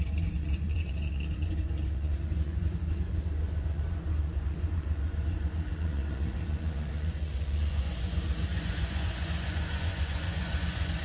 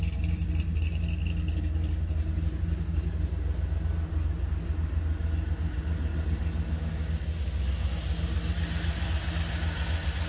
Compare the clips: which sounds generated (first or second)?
first